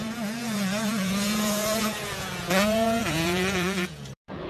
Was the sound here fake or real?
fake